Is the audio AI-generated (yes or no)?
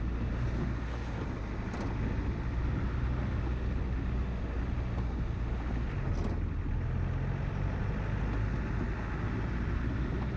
no